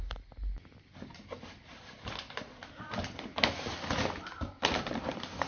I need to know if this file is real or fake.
real